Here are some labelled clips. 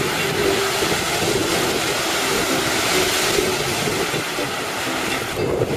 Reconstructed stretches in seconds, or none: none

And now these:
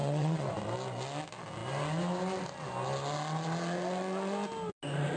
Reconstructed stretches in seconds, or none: 0.0-0.5 (vocoder, WaveNeXt)

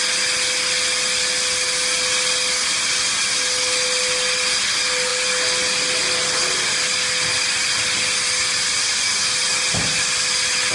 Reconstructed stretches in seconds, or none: none

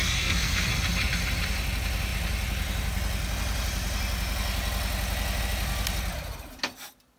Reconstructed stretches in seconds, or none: 0.0-0.7 (codec, SNAC)

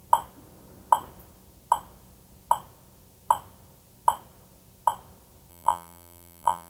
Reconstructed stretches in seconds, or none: 5.5-6.7 (vocoder, BigVGAN v2)

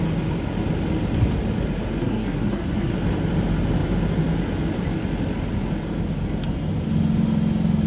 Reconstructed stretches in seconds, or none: 2.0-2.9 (codec, SNAC)

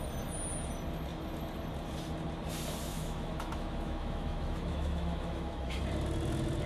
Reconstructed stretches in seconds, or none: 2.9-5.8 (autoencoder, DAC-VAE)

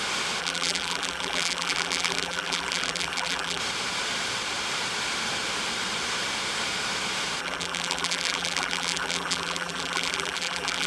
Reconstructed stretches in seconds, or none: 0.4-3.6 (vocoder, BigVGAN v2); 7.4-10.9